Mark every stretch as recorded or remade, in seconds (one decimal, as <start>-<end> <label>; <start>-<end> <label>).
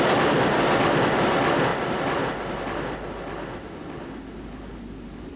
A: 0.0-1.7 recorded; 1.7-2.2 remade; 2.2-5.4 recorded